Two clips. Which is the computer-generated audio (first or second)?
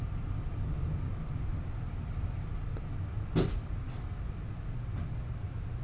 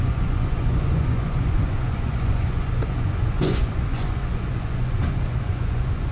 second